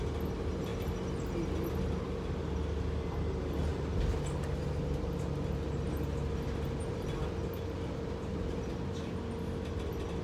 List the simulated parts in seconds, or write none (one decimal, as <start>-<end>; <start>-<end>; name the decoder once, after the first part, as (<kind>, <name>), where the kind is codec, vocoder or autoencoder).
none